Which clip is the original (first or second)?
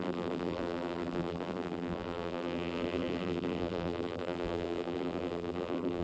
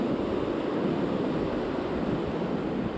second